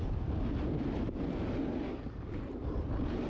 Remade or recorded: recorded